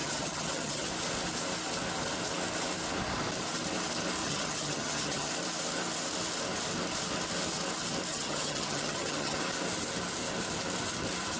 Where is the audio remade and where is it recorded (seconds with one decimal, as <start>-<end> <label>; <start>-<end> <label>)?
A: 0.0-0.9 remade; 0.9-4.2 recorded; 4.2-5.3 remade; 5.3-8.1 recorded; 8.1-9.4 remade; 9.4-11.4 recorded